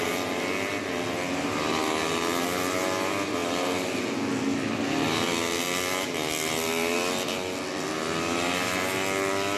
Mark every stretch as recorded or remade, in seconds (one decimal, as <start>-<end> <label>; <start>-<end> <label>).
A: 0.0-9.6 recorded